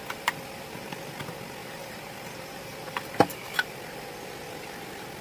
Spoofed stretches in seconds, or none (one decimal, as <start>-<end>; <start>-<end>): 1.6-3.0